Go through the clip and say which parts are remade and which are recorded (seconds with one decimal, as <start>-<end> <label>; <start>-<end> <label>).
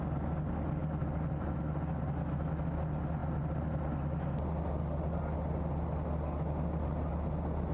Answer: 0.0-7.7 recorded